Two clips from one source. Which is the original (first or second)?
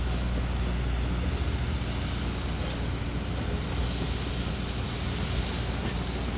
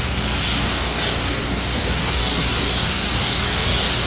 first